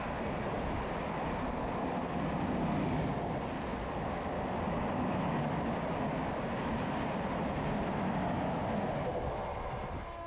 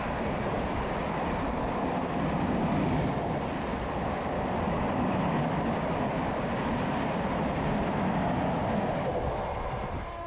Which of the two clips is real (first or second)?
first